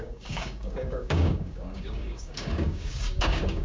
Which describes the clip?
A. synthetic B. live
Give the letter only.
A